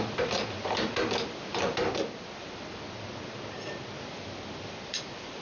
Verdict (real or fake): fake